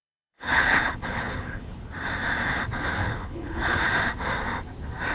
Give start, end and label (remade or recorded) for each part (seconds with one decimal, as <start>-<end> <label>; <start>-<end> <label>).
0.0-1.9 remade; 1.9-3.0 recorded; 3.0-3.8 remade; 3.8-5.1 recorded